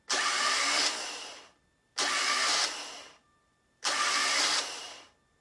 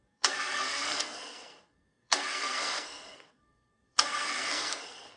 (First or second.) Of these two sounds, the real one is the first